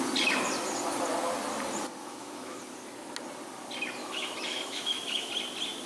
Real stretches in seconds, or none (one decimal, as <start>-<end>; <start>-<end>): 0.0-2.0; 2.6-4.0; 5.3-5.9